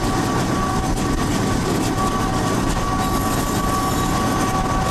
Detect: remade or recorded recorded